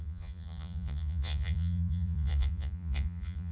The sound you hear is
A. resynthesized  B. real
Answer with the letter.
A